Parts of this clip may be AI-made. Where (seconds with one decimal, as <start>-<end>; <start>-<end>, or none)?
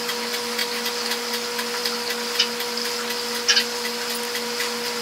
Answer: none